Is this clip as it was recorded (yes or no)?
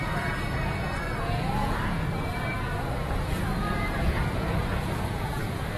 no